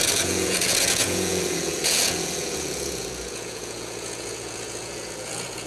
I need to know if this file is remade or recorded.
remade